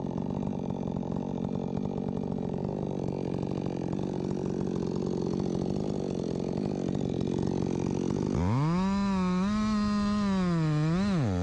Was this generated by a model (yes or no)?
no